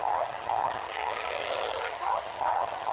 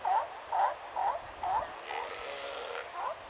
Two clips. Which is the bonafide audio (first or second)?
second